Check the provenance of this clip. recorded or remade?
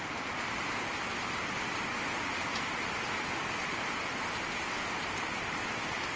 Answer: recorded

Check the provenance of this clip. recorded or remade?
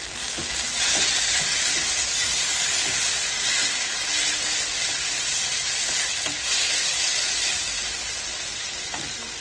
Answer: recorded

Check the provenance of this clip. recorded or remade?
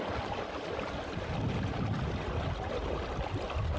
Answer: recorded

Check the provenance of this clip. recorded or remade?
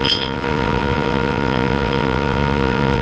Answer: remade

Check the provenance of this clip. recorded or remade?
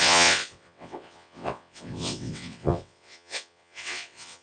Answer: remade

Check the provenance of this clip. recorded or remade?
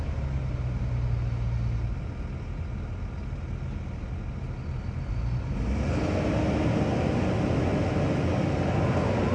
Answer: recorded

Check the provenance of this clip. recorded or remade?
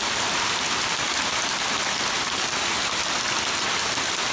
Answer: recorded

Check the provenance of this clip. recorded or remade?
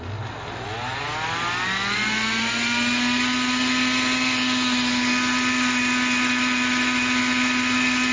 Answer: recorded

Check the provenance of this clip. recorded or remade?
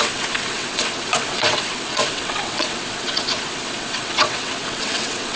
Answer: remade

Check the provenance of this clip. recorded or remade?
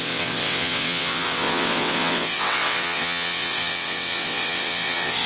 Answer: remade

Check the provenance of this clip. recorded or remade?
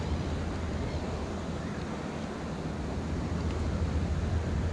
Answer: recorded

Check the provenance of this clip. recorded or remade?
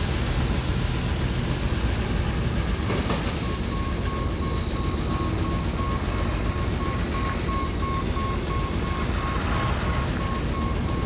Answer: recorded